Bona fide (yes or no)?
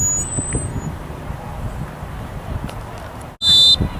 yes